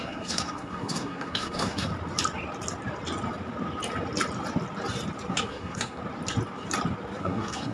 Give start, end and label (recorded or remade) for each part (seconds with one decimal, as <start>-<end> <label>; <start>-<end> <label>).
0.0-1.9 remade; 1.9-5.3 recorded; 5.3-6.0 remade; 6.0-7.2 recorded; 7.2-7.7 remade